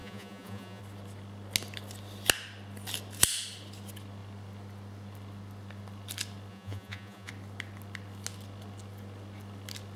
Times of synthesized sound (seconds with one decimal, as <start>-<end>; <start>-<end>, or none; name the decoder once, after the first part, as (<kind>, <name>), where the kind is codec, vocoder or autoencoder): 0.0-0.8 (vocoder, Vocos); 6.5-7.3